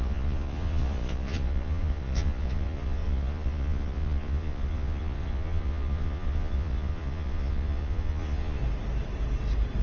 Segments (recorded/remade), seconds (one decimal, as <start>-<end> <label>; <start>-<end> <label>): 0.0-8.6 remade; 8.6-9.8 recorded